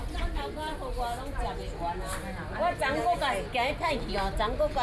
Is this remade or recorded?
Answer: recorded